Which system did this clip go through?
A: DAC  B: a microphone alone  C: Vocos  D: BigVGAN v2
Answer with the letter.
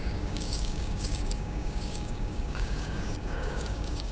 A